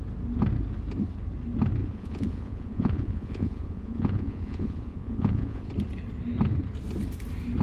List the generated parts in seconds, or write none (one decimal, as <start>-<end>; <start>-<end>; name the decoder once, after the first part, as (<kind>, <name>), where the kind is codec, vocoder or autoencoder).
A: 1.8-5.7 (vocoder, Vocos)